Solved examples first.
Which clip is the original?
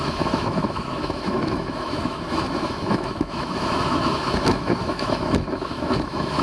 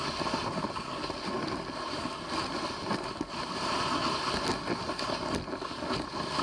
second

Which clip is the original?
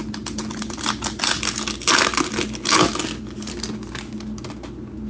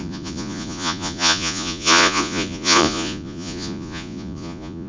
first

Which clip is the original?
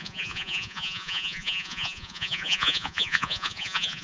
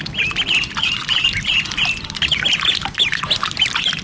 second